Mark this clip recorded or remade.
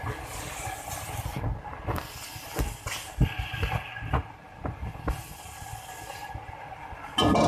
recorded